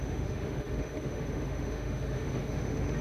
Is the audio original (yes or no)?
no